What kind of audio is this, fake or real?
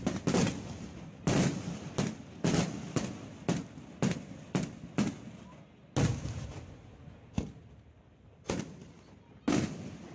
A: real